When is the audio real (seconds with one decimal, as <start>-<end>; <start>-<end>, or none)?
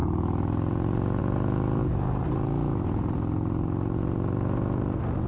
0.0-5.3